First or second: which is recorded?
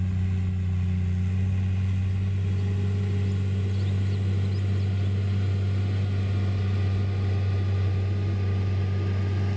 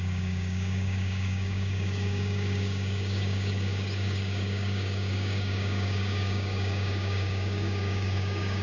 first